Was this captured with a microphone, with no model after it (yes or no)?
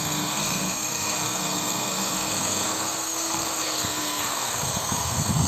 no